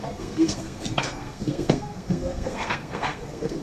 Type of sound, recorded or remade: remade